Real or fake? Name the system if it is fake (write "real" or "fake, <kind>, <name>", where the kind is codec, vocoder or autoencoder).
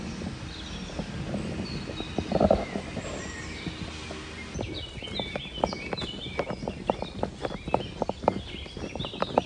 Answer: real